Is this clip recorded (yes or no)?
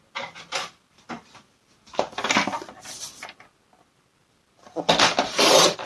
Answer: yes